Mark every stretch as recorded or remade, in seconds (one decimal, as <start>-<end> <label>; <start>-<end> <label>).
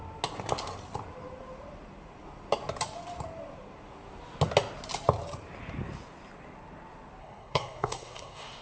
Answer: 0.0-7.2 recorded; 7.2-8.6 remade